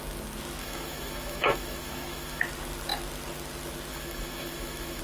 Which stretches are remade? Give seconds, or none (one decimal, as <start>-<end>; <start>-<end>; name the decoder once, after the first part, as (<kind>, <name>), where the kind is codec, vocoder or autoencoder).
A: 0.6-2.4 (autoencoder, DAC-VAE); 3.9-5.0